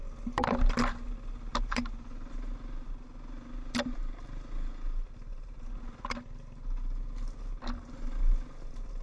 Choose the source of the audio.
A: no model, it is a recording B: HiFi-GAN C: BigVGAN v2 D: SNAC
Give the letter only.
A